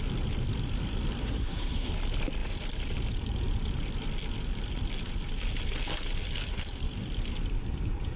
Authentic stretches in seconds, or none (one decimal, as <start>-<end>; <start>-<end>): 0.0-1.2; 1.9-8.2